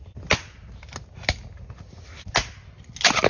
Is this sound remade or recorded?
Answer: recorded